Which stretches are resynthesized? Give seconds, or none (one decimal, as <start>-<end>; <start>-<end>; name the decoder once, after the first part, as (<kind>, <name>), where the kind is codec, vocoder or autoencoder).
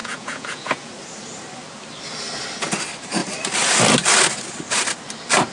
0.0-0.9 (vocoder, Vocos)